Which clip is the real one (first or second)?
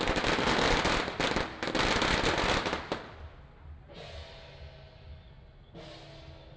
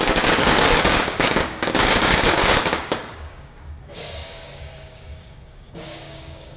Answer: first